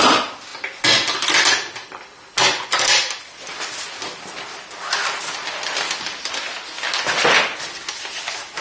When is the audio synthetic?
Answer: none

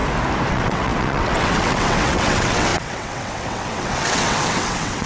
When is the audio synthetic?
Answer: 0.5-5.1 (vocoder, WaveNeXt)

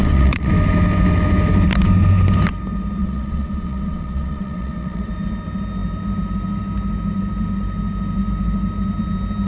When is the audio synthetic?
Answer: 0.0-0.5 (vocoder, WaveNeXt); 3.0-5.1

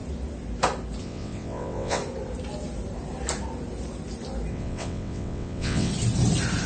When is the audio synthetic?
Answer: 1.0-2.0 (vocoder, WaveNeXt); 4.5-5.9

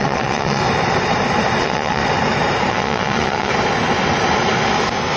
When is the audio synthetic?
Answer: 0.0-0.6 (vocoder, WaveNeXt); 1.6-2.0; 2.7-3.5

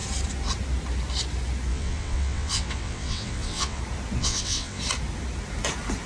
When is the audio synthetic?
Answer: 1.7-3.8 (vocoder, WaveNeXt); 4.2-4.8

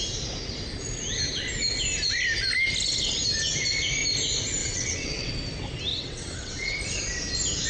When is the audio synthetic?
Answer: 4.6-5.3 (vocoder, WaveNeXt); 5.9-6.8